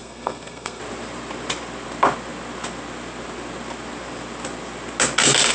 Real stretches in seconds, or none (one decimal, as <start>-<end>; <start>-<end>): 0.8-5.5